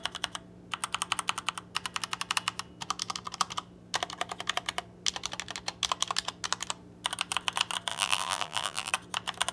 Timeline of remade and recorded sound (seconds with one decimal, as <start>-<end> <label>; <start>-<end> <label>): 0.0-7.9 recorded; 7.9-8.9 remade; 8.9-9.5 recorded